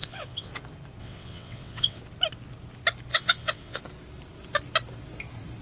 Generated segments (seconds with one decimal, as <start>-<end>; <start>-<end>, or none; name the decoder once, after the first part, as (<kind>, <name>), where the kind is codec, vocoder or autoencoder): 0.0-0.5 (vocoder, WaveNeXt); 1.0-2.0; 3.1-3.8